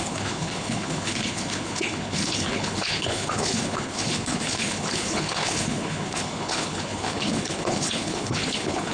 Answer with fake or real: fake